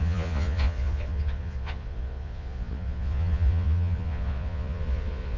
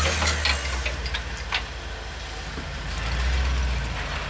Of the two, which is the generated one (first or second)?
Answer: first